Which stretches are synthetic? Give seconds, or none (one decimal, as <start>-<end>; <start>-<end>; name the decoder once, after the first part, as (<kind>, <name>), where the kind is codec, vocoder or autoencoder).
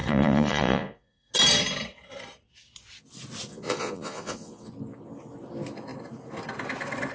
0.0-1.3 (vocoder, Vocos); 3.5-4.7